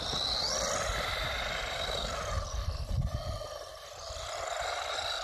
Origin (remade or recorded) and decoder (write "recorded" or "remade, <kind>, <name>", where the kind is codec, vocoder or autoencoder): recorded